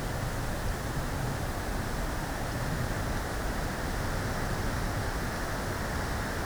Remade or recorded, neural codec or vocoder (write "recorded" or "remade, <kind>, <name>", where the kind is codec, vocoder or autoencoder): recorded